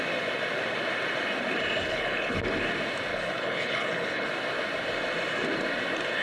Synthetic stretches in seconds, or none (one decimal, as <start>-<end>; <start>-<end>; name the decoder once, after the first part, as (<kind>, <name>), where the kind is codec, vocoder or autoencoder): 1.8-2.4 (codec, HILCodec); 3.1-4.3